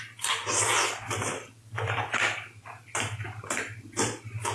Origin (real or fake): real